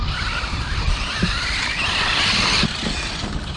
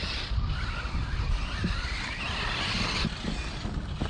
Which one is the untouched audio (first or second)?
second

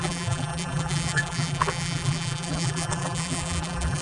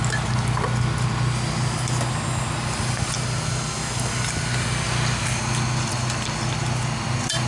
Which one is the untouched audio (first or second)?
second